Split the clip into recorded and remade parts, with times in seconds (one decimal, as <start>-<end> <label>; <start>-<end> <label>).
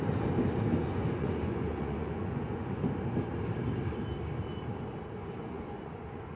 0.0-0.7 recorded; 0.7-2.8 remade; 2.8-5.2 recorded; 5.2-6.4 remade